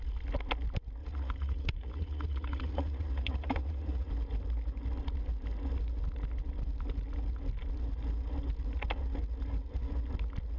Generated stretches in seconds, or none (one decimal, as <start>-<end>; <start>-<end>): 1.0-4.1